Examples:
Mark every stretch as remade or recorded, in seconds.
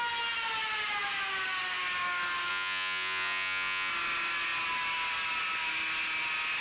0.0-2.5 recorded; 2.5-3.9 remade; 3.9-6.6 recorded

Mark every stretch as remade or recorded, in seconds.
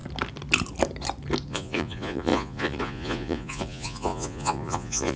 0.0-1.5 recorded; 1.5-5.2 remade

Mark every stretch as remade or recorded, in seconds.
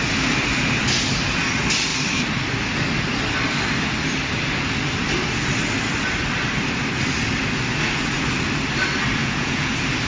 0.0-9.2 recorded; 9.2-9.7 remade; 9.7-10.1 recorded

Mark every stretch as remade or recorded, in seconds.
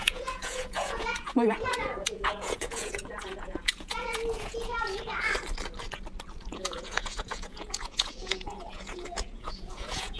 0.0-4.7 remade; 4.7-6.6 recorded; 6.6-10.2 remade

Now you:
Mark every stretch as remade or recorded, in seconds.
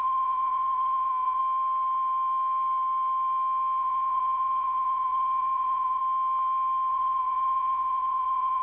0.0-1.4 remade; 1.4-3.8 recorded; 3.8-6.0 remade; 6.0-6.9 recorded; 6.9-8.6 remade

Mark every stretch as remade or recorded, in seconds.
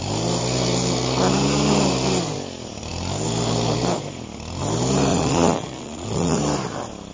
0.0-5.1 recorded; 5.1-6.4 remade; 6.4-7.1 recorded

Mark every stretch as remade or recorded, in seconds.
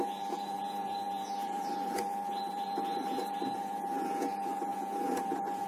0.0-5.7 remade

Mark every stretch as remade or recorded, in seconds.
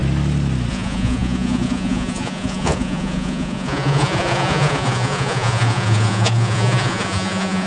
0.0-0.7 recorded; 0.7-7.7 remade